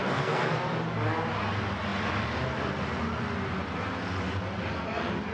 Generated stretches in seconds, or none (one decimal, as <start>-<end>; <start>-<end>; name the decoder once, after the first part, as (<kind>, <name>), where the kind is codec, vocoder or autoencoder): 0.0-0.5 (codec, SNAC)